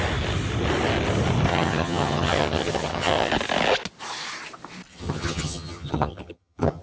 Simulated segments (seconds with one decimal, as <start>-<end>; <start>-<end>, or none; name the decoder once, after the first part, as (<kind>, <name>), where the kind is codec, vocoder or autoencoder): 1.5-3.3 (vocoder, HiFi-GAN); 4.9-6.8